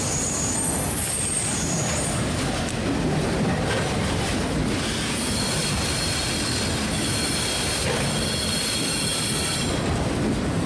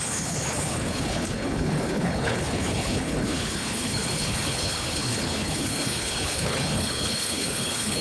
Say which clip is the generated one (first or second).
second